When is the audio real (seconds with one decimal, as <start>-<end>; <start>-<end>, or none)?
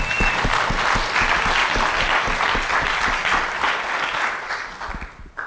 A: 0.0-5.5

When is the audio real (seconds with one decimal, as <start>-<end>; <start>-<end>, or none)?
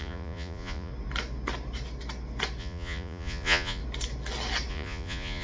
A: 0.9-2.6; 3.8-4.7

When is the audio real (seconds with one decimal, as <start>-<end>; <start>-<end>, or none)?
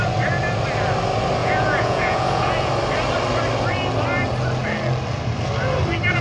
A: 0.0-1.4; 2.7-6.2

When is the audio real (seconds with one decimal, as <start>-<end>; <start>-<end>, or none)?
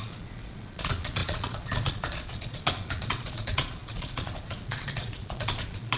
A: none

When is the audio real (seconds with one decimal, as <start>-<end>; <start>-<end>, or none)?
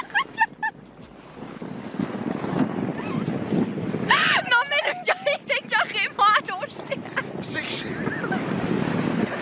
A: 0.0-9.4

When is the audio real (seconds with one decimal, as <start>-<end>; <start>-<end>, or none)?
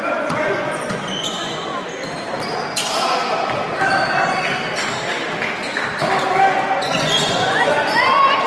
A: 1.7-6.8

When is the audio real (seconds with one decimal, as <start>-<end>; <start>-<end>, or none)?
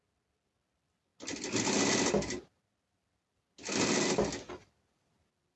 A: 0.0-5.6